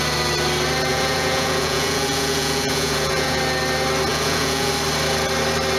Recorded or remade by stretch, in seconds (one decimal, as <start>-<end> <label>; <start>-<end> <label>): 0.0-0.9 recorded; 0.9-3.4 remade; 3.4-4.1 recorded; 4.1-4.7 remade; 4.7-5.8 recorded